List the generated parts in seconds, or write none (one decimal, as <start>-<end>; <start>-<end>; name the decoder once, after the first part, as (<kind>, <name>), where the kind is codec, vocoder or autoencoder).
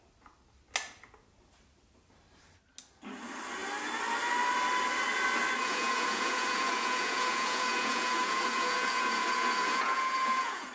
5.6-10.7 (vocoder, Vocos)